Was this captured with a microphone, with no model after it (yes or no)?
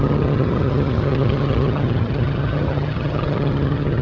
no